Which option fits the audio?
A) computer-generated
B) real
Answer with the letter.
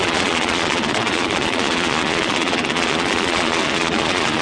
A